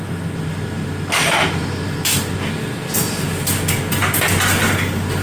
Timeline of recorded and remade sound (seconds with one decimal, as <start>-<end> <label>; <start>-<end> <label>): 0.0-5.2 recorded